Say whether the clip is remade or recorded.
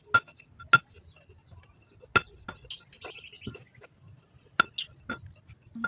recorded